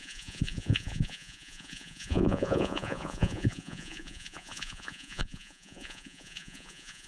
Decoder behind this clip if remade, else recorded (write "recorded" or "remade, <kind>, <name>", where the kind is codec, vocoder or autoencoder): remade, vocoder, Vocos